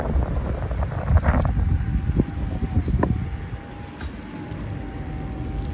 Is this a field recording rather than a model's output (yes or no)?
yes